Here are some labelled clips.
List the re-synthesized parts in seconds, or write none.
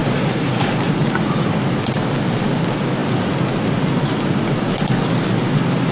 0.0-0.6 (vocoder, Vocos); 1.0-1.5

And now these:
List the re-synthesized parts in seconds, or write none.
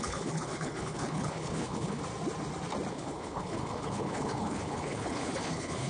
0.0-2.0 (codec, HILCodec); 2.9-5.9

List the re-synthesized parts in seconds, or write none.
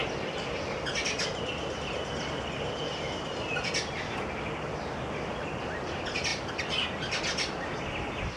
none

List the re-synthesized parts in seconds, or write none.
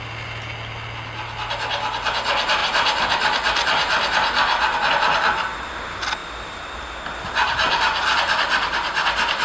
none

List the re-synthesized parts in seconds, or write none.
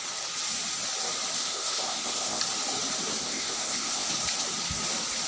1.4-2.4 (codec, ZipCodec); 3.2-4.1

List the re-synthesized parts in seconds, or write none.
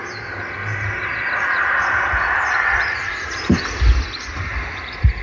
1.5-3.5 (vocoder, BigVGAN v2); 4.5-5.2